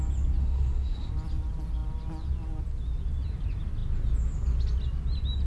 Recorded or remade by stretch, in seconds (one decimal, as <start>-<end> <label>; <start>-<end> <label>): 0.0-0.4 recorded; 0.4-1.1 remade; 1.1-5.5 recorded